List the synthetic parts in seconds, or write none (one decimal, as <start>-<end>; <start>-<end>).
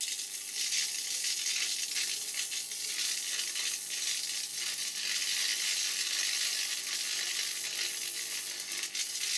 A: none